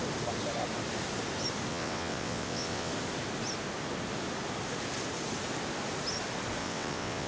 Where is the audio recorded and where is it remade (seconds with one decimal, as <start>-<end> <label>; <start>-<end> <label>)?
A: 0.0-1.7 recorded; 1.7-2.9 remade; 2.9-6.6 recorded; 6.6-7.3 remade